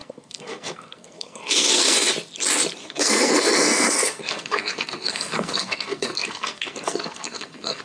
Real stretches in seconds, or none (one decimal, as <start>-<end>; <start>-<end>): 2.1-2.8